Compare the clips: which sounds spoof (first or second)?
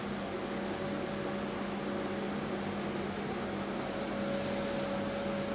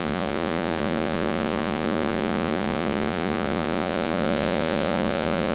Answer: second